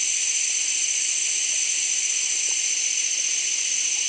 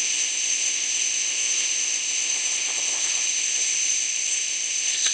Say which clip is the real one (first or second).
first